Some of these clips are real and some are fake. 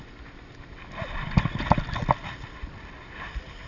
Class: real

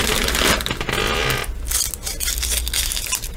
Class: real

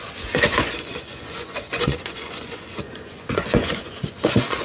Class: fake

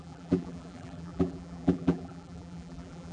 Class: fake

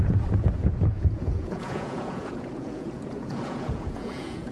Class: fake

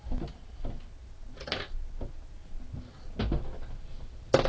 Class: real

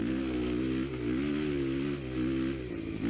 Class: real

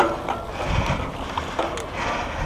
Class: real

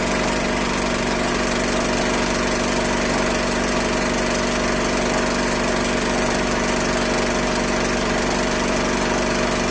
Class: real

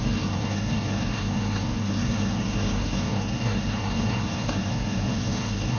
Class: fake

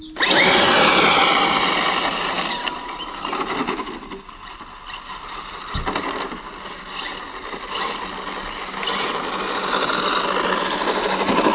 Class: real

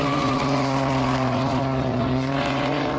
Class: fake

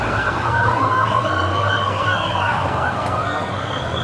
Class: fake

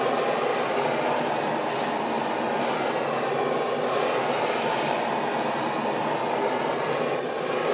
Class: real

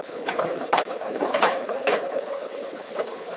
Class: fake